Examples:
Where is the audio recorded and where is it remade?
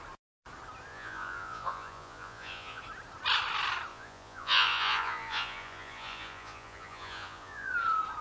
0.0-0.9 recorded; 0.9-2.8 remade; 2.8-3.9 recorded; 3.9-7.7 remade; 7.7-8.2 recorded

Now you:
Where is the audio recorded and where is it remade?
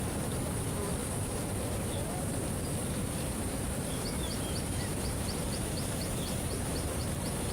0.0-2.8 recorded; 2.8-7.5 remade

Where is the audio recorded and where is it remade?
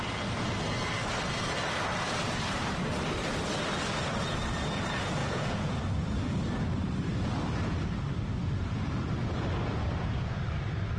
0.0-5.2 recorded; 5.2-5.8 remade; 5.8-11.0 recorded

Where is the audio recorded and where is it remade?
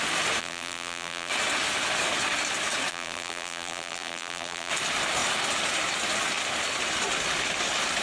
0.0-0.4 recorded; 0.4-1.3 remade; 1.3-2.9 recorded; 2.9-4.7 remade; 4.7-8.0 recorded